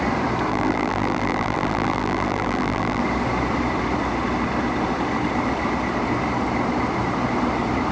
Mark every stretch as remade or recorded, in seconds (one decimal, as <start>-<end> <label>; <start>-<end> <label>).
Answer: 0.0-0.5 recorded; 0.5-3.0 remade; 3.0-7.9 recorded